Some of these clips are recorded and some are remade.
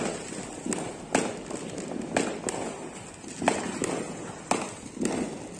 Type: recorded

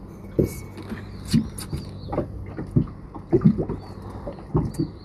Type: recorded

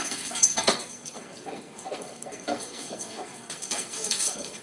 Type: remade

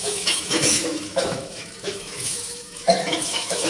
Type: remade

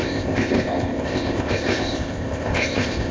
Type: remade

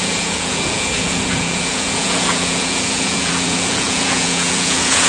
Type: remade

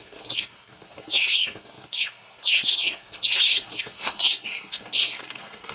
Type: remade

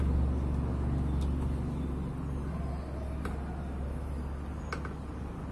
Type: recorded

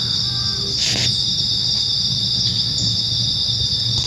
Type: recorded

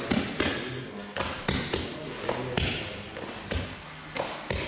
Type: recorded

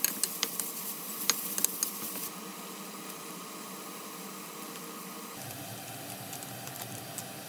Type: recorded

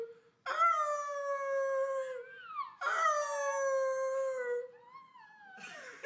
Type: recorded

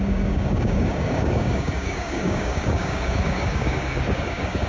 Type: remade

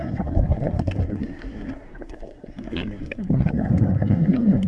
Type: remade